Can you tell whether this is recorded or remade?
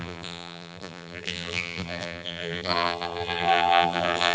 remade